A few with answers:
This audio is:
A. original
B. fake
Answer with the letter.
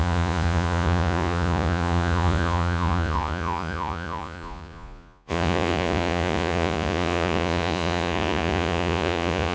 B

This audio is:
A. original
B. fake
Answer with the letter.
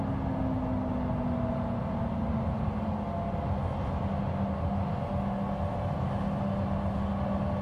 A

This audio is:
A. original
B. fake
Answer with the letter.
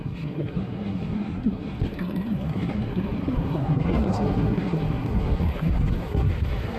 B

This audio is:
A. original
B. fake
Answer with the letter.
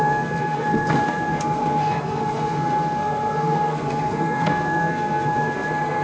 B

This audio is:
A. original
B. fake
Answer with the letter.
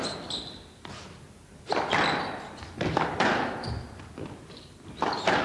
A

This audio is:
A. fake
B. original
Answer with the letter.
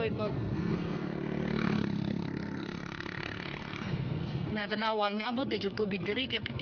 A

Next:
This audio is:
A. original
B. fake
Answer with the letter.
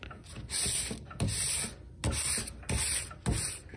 A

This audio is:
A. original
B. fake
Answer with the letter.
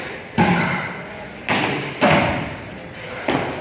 A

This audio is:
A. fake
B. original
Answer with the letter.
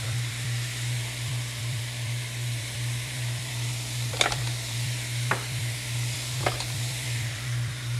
A